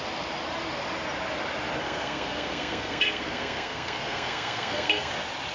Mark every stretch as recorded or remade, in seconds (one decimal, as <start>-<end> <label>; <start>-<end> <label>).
0.0-1.8 recorded; 1.8-5.1 remade; 5.1-5.5 recorded